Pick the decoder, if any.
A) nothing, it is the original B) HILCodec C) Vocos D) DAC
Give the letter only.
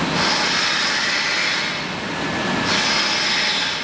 A